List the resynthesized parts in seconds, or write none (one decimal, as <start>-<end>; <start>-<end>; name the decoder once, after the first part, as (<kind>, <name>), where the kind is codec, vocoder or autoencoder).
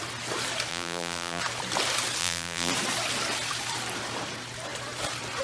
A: 0.7-1.4 (vocoder, BigVGAN v2); 2.2-2.7